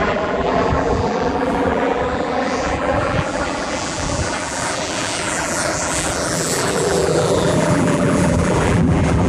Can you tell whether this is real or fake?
fake